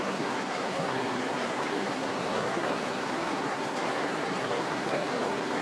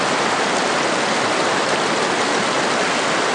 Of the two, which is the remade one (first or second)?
first